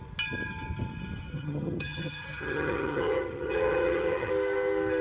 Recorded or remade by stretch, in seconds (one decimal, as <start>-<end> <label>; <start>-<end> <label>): 0.0-1.3 recorded; 1.3-4.3 remade; 4.3-5.0 recorded